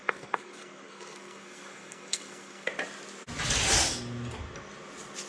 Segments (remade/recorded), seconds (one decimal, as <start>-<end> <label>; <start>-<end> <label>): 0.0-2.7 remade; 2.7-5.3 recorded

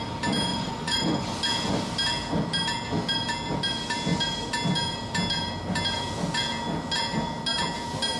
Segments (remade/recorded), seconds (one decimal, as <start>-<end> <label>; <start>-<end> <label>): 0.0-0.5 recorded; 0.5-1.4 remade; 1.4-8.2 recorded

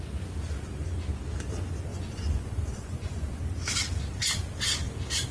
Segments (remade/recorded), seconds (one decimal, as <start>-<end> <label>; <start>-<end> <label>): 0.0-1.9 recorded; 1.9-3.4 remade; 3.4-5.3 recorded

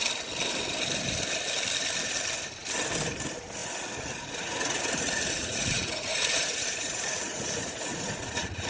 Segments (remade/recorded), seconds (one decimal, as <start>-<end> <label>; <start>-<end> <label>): 0.0-3.6 recorded; 3.6-8.7 remade

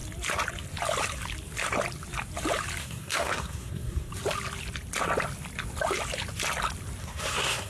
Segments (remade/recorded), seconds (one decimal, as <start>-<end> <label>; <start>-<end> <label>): 0.0-2.8 recorded; 2.8-4.1 remade; 4.1-7.0 recorded; 7.0-7.7 remade